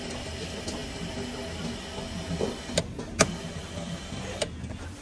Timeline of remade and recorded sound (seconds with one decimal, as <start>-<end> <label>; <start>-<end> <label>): 0.0-5.0 recorded